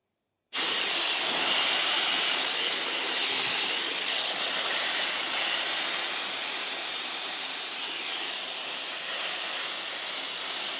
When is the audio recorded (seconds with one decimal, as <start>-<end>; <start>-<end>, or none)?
3.7-4.7; 5.2-6.4; 9.1-10.8